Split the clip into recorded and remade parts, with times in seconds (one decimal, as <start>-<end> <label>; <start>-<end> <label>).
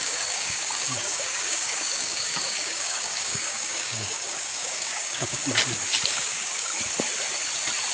0.0-5.4 remade; 5.4-6.1 recorded; 6.1-6.7 remade; 6.7-7.9 recorded